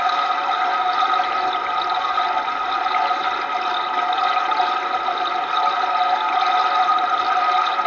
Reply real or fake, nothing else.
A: real